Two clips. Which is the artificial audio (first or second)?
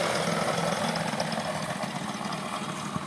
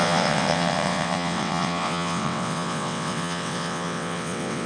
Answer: second